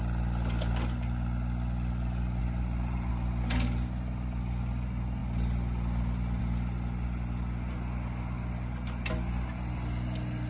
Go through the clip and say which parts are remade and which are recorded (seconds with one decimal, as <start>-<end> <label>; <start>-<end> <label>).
0.0-2.4 recorded; 2.4-3.1 remade; 3.1-10.5 recorded